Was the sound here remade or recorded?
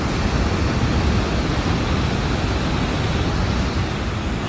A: recorded